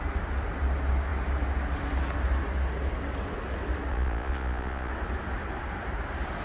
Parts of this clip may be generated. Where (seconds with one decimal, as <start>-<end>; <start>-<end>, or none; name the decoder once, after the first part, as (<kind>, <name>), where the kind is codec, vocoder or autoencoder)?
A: 3.9-4.9 (vocoder, Vocos)